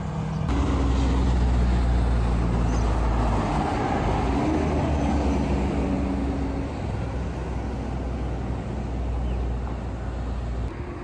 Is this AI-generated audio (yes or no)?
no